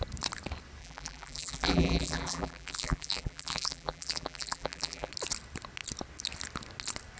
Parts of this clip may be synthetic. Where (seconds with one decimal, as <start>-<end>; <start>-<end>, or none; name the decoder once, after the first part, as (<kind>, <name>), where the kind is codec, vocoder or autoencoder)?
0.8-5.1 (vocoder, BigVGAN v2)